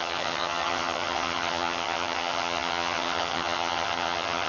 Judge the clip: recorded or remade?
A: remade